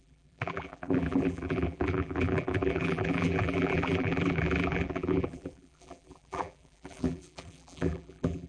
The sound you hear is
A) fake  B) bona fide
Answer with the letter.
A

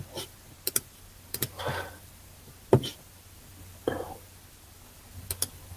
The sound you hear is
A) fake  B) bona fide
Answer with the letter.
A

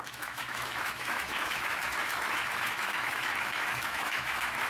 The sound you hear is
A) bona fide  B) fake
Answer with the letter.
B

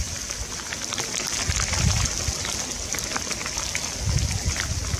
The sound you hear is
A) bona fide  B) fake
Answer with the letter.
A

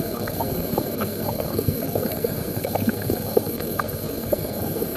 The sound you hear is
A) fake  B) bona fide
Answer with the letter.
A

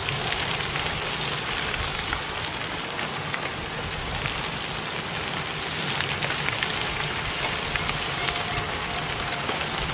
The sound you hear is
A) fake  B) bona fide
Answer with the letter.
B